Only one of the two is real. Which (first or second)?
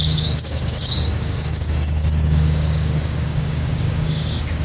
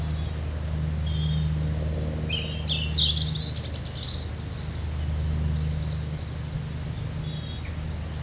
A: second